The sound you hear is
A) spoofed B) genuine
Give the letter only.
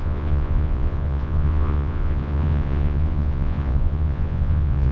A